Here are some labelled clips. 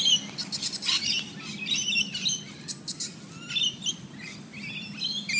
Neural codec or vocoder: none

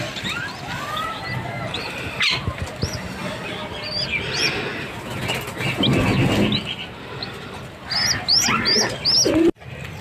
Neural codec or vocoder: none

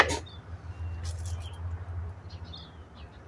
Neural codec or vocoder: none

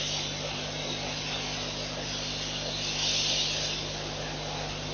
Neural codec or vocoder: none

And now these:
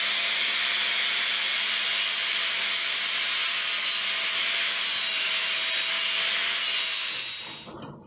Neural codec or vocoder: none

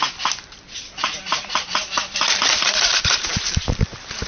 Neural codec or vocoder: none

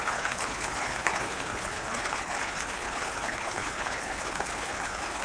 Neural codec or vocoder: codec, HILCodec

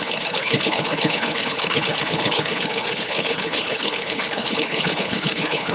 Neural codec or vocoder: codec, HILCodec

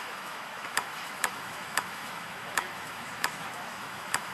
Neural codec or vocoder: autoencoder, DAC-VAE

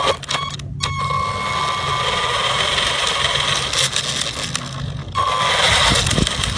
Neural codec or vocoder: none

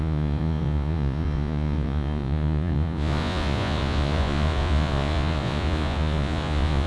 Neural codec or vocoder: vocoder, Vocos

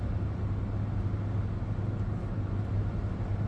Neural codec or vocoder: none